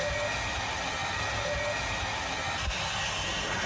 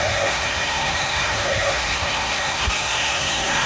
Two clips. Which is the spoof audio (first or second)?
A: second